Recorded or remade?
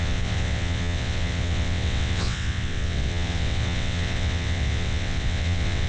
remade